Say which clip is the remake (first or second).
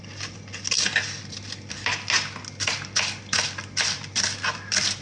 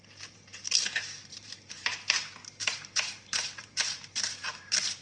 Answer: second